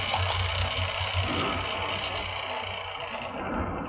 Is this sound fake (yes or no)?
no